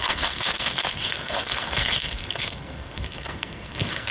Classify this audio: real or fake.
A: fake